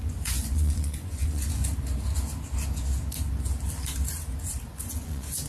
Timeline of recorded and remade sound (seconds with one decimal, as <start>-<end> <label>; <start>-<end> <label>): 0.0-1.6 remade; 1.6-4.9 recorded; 4.9-5.5 remade

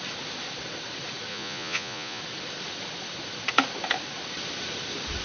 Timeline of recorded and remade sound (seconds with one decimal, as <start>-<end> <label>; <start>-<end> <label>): 0.0-1.3 recorded; 1.3-2.2 remade; 2.2-5.2 recorded

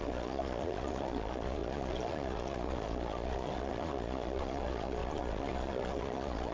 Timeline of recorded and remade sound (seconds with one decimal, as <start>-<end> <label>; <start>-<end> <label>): 0.0-6.5 remade